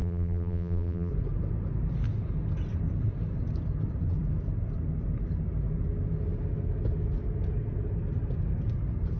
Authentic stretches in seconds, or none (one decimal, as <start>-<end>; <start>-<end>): 1.1-9.2